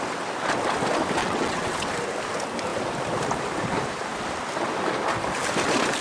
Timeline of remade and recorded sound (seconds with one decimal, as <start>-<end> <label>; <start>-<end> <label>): 0.0-1.2 recorded; 1.2-1.9 remade; 1.9-6.0 recorded